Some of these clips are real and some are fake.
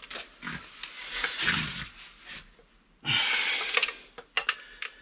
real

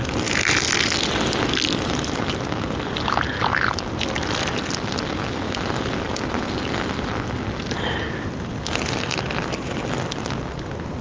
real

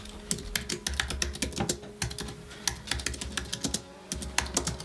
real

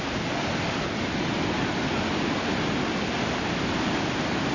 real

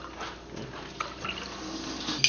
real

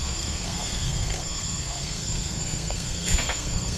fake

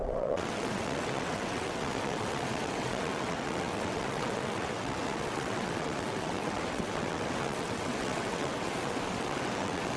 fake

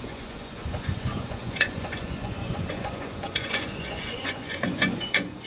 fake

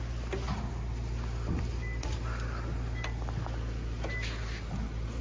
real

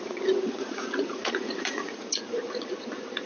fake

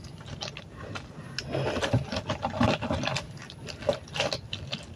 real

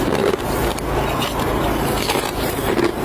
real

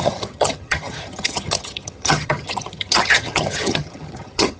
fake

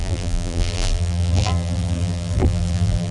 fake